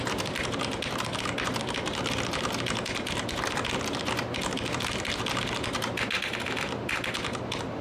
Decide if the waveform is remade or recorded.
recorded